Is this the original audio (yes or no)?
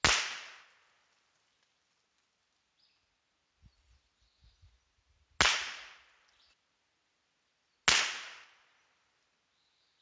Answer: yes